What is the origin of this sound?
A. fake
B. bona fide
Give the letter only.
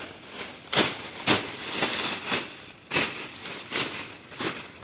B